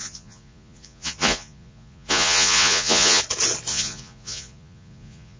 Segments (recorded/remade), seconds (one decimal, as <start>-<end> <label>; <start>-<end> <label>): 0.0-3.2 remade; 3.2-3.7 recorded; 3.7-5.4 remade